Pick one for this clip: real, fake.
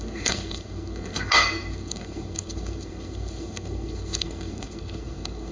fake